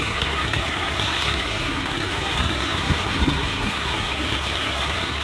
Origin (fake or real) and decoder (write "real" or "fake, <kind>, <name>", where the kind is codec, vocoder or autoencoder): fake, codec, SNAC